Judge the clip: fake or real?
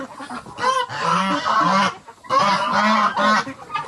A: real